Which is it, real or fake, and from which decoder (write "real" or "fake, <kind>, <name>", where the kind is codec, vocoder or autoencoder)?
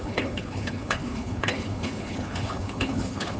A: fake, codec, HILCodec